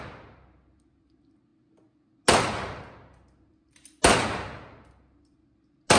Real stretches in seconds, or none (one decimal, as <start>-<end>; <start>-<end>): 0.0-6.0